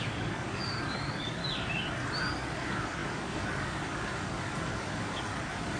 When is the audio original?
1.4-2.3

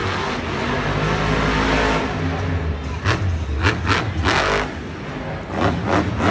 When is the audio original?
0.0-6.3

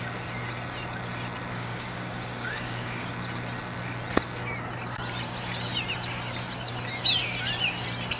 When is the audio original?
0.0-1.5; 3.1-8.2

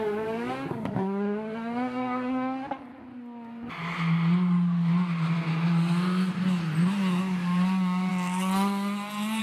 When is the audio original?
2.9-7.2; 8.1-9.4

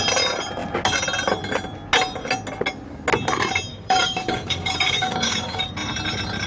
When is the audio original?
0.0-3.7; 5.7-6.5